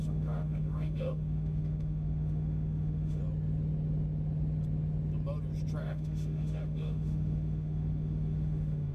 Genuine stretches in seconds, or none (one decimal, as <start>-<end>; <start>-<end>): 3.2-5.8